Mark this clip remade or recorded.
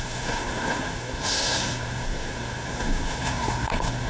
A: remade